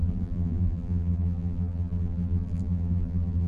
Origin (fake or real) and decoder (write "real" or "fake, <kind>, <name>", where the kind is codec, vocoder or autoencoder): fake, vocoder, BigVGAN v2